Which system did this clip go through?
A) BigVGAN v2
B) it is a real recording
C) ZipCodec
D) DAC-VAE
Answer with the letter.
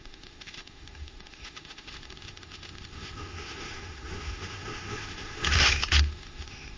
D